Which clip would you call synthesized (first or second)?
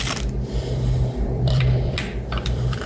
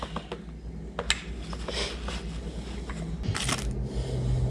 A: first